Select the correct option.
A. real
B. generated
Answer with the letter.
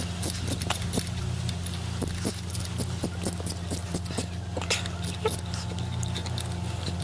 A